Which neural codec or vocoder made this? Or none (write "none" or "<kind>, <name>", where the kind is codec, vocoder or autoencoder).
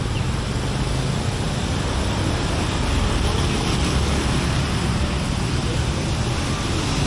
none